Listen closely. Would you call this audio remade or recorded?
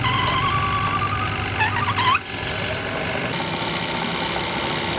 recorded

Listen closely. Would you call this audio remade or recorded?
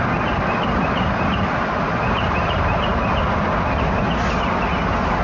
recorded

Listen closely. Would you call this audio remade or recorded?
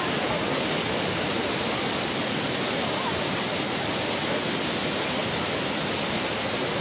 recorded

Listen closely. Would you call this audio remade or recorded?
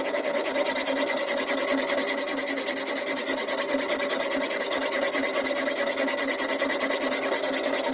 recorded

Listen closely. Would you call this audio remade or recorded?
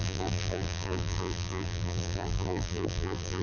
remade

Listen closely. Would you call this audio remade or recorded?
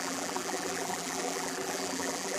remade